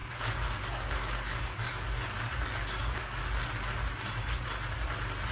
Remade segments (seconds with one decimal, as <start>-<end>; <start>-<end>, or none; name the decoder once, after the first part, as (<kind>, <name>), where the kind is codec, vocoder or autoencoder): 0.0-3.2 (codec, DAC)